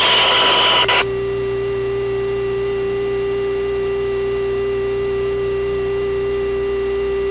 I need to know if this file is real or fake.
real